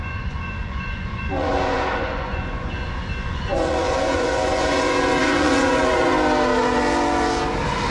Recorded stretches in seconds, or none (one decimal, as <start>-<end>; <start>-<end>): 6.1-7.9